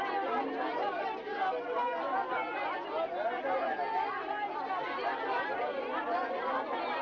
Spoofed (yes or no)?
no